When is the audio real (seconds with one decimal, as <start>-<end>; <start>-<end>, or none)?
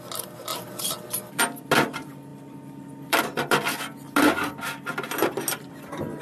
0.0-0.5; 1.4-2.3; 3.2-6.2